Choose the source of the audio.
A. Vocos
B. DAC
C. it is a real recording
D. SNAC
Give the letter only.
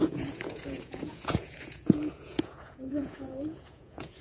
A